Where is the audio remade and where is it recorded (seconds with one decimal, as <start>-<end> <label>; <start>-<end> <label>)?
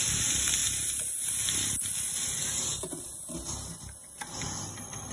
0.0-0.6 recorded; 0.6-1.3 remade; 1.3-5.1 recorded